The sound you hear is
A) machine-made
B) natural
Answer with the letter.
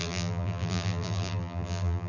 A